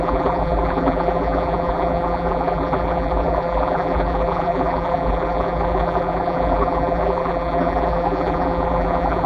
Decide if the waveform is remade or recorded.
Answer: remade